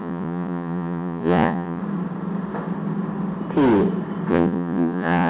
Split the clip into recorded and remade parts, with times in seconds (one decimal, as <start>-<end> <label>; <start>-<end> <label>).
0.0-1.8 remade; 1.8-4.3 recorded; 4.3-5.3 remade